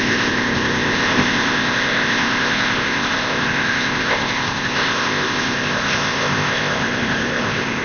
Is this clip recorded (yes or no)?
no